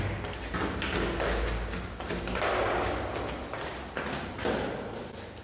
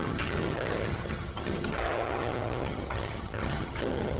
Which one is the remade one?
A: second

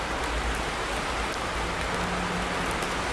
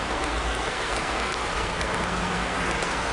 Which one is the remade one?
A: second